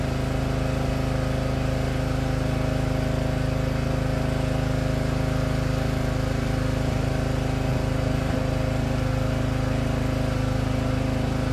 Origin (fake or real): real